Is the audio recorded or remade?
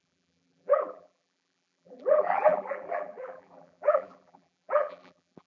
remade